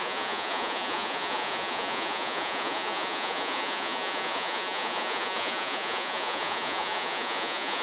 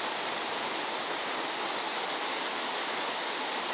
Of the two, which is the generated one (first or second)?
first